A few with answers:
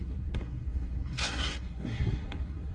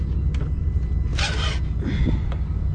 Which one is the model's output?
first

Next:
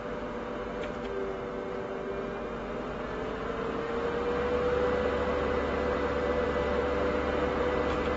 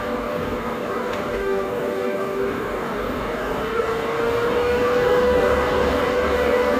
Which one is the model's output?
second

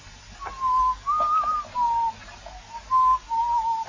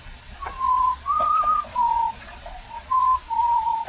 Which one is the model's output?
second